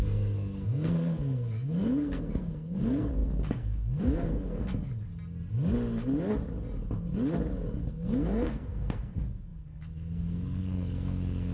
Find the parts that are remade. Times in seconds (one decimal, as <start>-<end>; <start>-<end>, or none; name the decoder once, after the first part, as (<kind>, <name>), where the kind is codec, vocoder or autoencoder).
0.0-5.1 (codec, SNAC); 7.8-11.5